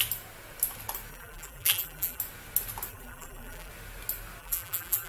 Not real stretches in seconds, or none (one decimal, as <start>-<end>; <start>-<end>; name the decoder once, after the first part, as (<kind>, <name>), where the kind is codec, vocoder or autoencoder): 1.1-2.2 (vocoder, BigVGAN v2); 2.9-3.7; 4.4-5.1